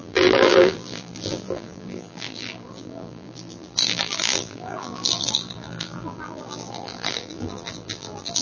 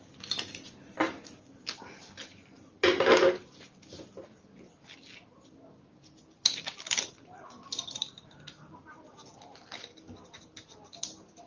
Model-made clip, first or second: first